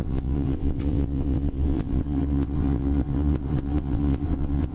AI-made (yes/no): yes